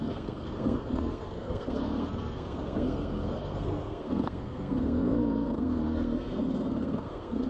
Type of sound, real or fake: fake